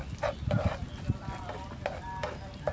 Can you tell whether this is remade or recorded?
recorded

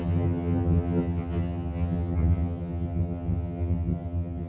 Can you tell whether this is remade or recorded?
remade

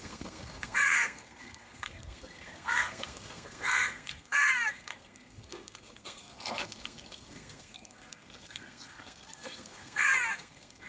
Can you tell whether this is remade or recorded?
remade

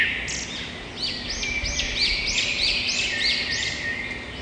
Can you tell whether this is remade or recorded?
recorded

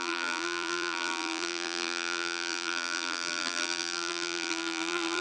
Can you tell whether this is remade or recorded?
remade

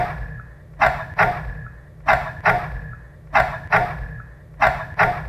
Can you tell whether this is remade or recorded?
recorded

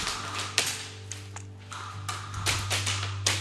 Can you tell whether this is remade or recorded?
recorded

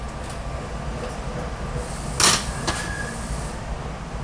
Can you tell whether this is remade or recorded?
recorded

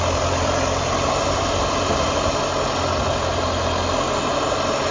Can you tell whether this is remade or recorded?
recorded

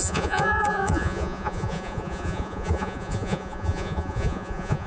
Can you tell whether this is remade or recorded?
remade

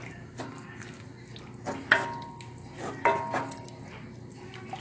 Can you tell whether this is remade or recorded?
recorded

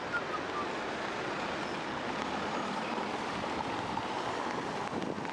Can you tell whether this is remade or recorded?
remade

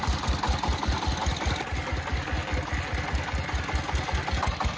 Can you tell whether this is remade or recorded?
recorded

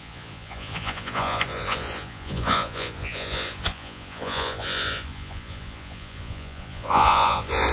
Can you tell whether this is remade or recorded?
remade